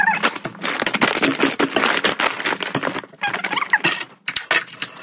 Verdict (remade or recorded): recorded